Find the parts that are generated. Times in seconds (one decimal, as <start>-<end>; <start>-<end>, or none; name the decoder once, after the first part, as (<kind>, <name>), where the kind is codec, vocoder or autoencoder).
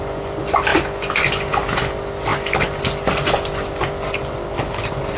none